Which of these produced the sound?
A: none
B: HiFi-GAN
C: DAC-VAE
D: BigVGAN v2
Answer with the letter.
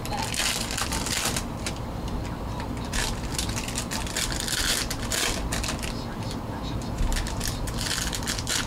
D